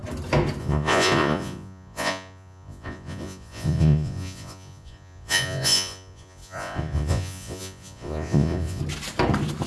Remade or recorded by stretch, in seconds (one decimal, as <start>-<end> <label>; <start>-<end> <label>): 0.0-0.6 recorded; 0.6-8.8 remade; 8.8-9.7 recorded